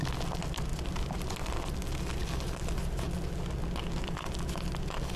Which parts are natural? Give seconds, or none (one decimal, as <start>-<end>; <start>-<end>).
0.0-0.7; 1.8-5.2